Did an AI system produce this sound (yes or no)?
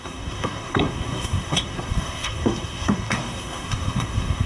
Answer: yes